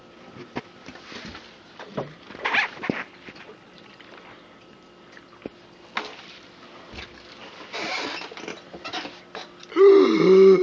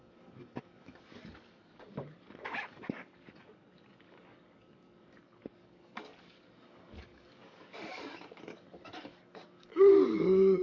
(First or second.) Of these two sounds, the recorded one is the first